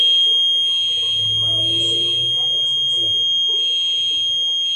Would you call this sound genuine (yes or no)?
yes